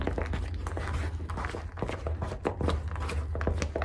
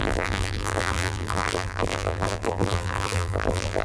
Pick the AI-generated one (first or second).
second